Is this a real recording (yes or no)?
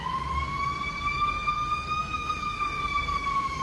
no